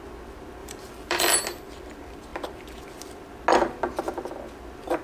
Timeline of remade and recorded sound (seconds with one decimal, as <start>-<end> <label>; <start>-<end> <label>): 0.0-0.6 recorded; 0.6-1.2 remade; 1.2-5.0 recorded